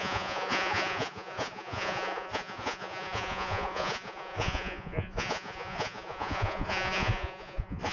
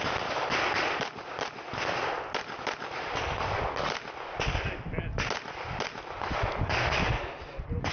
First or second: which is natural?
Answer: second